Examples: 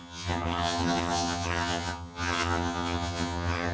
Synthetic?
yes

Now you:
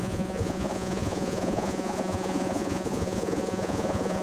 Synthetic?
yes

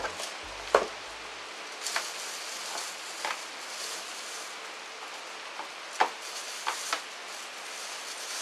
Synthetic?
no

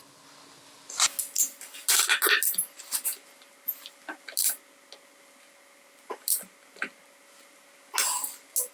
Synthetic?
no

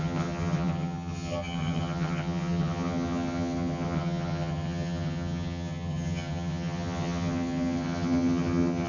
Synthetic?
yes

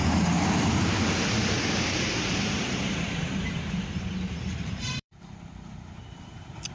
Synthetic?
yes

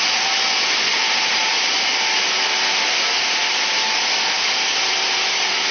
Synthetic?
no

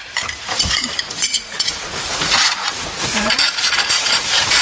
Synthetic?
yes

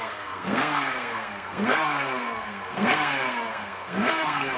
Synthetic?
yes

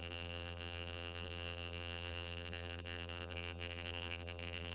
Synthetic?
yes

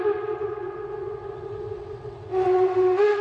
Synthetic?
yes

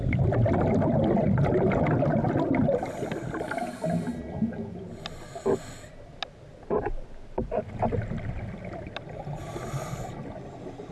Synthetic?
no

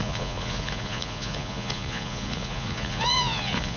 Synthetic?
yes